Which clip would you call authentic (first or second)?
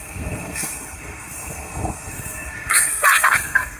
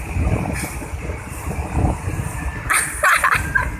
second